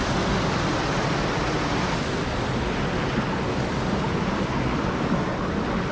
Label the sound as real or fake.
real